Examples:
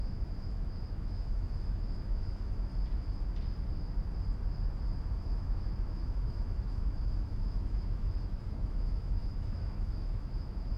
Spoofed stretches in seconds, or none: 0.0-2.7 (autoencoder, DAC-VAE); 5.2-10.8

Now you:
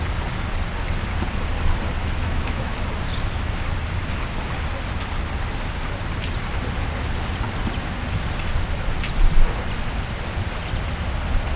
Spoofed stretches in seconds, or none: 2.0-2.7 (autoencoder, DAC-VAE)

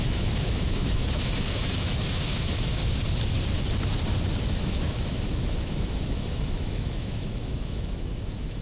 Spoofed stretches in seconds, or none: 0.0-2.8 (autoencoder, DAC-VAE); 4.6-8.6

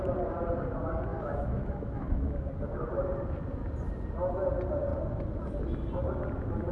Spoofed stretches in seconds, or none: 1.1-2.5 (autoencoder, DAC-VAE)

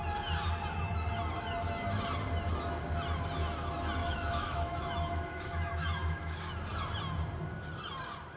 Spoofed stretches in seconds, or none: 4.0-6.5 (autoencoder, DAC-VAE)